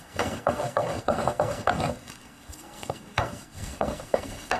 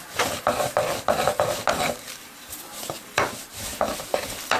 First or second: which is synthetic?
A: first